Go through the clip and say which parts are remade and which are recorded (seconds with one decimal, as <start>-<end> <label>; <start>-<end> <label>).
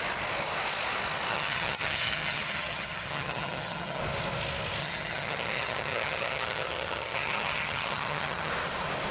0.0-1.3 recorded; 1.3-4.0 remade; 4.0-4.8 recorded; 4.8-8.5 remade; 8.5-9.1 recorded